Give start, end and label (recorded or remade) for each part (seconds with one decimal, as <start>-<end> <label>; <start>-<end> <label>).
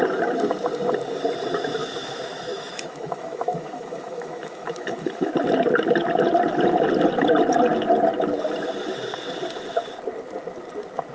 0.0-1.8 recorded; 1.8-5.3 remade; 5.3-11.1 recorded